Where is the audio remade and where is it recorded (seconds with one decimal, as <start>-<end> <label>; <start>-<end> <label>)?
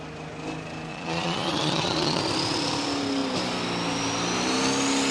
0.0-0.9 recorded; 0.9-2.2 remade; 2.2-5.1 recorded